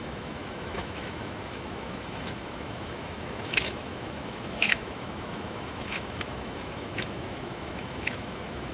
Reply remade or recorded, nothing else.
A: remade